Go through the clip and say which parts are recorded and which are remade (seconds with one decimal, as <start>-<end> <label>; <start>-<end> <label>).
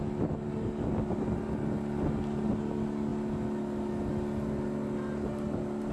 0.0-5.9 recorded